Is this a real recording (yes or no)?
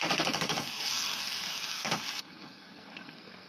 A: no